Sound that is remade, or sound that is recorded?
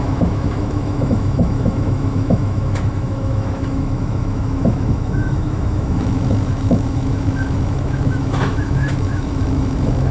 remade